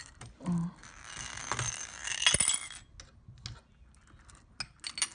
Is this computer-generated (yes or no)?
no